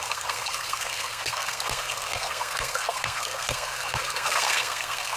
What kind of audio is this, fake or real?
fake